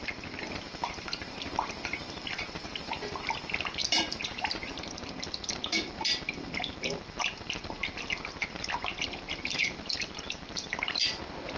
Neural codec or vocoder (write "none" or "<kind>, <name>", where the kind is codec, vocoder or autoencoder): none